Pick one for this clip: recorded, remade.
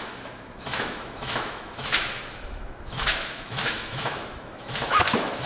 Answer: remade